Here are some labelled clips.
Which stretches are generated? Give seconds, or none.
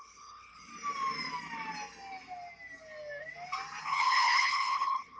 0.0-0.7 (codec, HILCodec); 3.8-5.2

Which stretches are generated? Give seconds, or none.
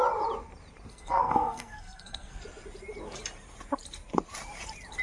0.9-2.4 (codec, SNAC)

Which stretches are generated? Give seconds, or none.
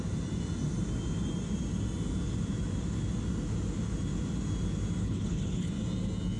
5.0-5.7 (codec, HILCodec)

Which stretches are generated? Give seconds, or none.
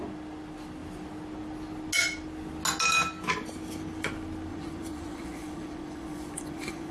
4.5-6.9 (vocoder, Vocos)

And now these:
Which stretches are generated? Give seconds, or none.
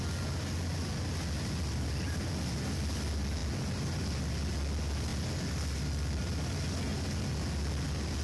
none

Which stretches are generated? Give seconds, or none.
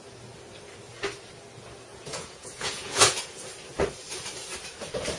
1.9-3.5 (vocoder, Vocos)